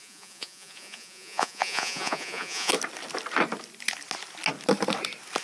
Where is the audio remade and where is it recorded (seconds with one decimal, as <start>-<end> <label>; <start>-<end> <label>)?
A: 0.0-2.7 remade; 2.7-5.4 recorded